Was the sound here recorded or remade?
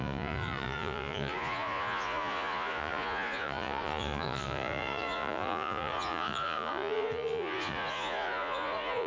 remade